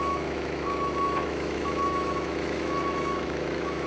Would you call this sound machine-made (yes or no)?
yes